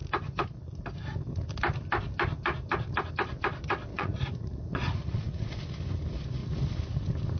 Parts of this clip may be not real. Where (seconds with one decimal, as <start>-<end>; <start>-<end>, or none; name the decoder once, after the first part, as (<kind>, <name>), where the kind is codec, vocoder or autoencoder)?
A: 3.9-5.6 (vocoder, Vocos)